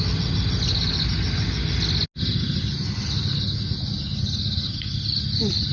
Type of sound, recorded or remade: recorded